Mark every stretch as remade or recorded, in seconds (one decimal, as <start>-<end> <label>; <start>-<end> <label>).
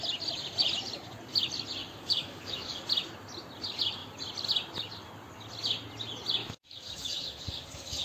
0.0-1.8 recorded; 1.8-2.8 remade; 2.8-6.4 recorded; 6.4-8.0 remade